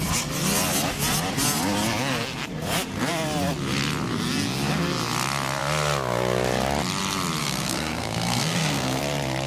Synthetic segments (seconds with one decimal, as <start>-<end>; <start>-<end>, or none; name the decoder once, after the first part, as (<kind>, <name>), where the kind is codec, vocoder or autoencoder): 7.4-9.0 (codec, SNAC)